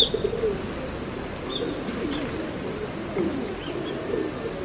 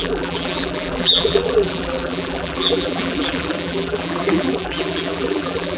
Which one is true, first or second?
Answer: first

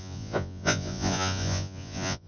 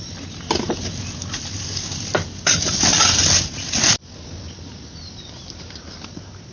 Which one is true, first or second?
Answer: second